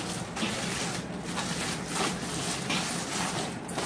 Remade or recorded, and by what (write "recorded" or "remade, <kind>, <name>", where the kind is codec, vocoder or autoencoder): recorded